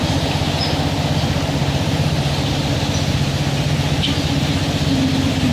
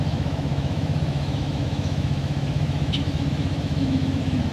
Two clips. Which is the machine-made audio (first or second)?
second